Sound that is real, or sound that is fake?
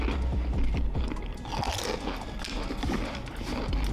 real